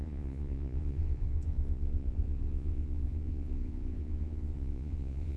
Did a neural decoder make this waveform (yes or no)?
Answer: yes